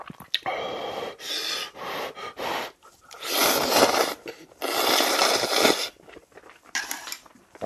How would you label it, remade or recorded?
recorded